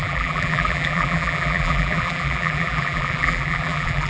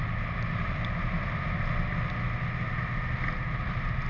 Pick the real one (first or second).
second